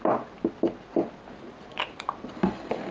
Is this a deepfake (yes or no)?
no